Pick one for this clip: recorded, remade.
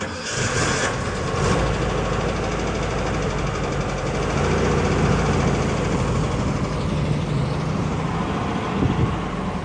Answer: recorded